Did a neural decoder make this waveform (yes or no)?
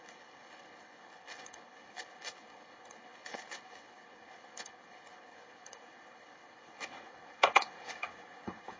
yes